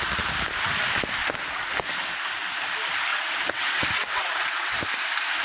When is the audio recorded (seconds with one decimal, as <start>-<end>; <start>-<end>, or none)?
0.0-3.1; 4.8-5.4